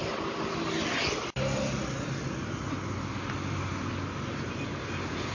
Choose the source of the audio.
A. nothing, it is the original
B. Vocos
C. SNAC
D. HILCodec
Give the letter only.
A